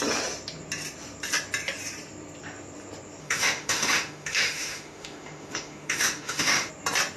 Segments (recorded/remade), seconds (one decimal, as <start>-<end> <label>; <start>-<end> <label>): 0.0-3.2 recorded; 3.2-6.7 remade; 6.7-7.2 recorded